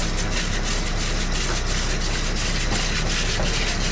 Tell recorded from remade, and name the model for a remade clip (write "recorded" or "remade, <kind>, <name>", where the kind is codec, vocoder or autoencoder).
recorded